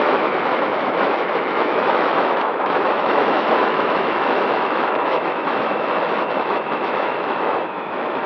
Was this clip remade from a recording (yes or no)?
yes